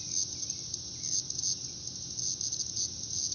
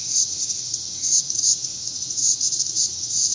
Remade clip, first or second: second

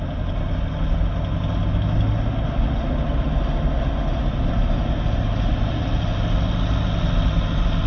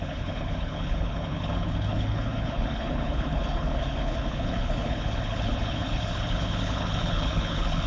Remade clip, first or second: second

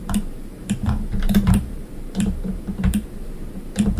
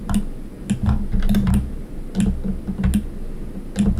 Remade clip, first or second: first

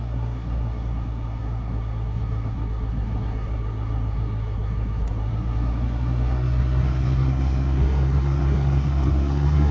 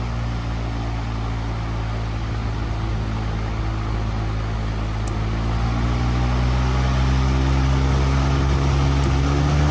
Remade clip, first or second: first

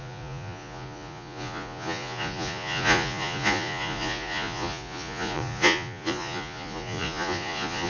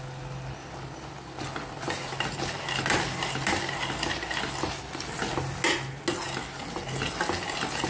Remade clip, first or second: first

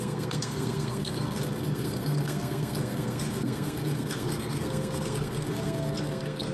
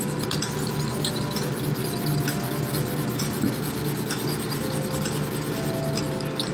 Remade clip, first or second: first